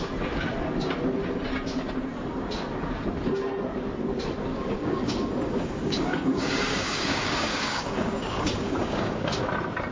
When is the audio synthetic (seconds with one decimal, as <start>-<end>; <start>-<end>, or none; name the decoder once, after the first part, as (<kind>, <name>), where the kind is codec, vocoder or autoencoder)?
4.5-9.5 (codec, DAC)